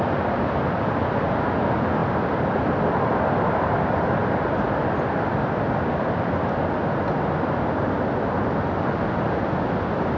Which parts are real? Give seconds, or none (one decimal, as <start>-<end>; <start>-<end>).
0.0-2.0; 2.9-10.2